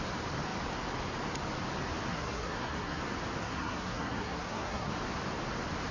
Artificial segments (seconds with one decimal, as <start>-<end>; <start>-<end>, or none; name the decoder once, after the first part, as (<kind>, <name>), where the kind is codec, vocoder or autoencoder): 2.1-3.0 (codec, SNAC); 3.4-4.9

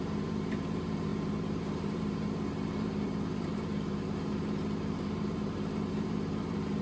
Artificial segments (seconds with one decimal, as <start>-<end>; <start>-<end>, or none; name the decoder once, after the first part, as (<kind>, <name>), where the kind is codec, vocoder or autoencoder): 0.0-6.8 (vocoder, BigVGAN v2)

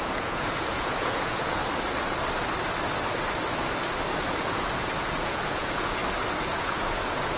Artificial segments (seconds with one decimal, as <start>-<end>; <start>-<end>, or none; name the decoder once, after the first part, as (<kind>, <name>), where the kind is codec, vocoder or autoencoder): 0.0-1.6 (vocoder, Vocos); 4.3-6.0; 6.5-7.4

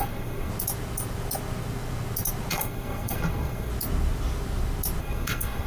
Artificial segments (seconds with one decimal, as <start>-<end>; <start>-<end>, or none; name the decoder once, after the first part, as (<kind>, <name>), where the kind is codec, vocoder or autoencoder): 0.0-0.5 (codec, SNAC); 2.5-3.7; 5.0-5.7

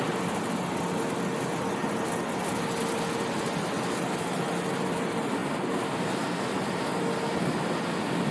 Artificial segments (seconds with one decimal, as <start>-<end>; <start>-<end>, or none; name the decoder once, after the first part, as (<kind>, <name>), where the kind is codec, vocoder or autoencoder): none

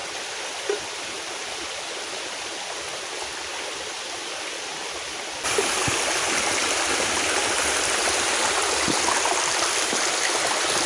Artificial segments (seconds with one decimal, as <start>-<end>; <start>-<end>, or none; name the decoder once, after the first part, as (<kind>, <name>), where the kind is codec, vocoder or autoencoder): none

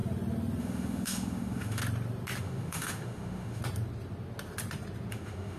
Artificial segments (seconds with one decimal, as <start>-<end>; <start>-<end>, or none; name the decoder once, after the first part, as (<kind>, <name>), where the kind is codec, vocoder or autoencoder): 0.6-1.8 (autoencoder, DAC-VAE); 2.4-3.6; 5.1-5.6

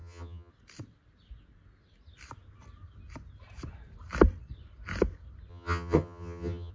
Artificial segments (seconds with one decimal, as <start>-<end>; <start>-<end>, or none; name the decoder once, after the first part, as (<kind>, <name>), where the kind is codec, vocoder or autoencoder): 0.0-0.5 (vocoder, HiFi-GAN); 5.5-6.7